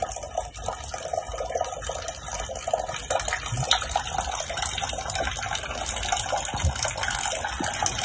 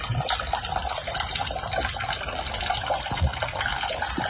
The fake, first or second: second